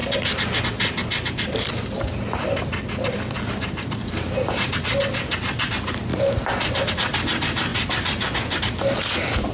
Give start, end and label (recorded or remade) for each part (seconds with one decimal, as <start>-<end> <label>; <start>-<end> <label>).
0.0-9.5 recorded